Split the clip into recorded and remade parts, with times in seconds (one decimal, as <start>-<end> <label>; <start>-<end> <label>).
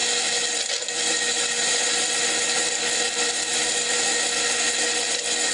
0.0-5.5 recorded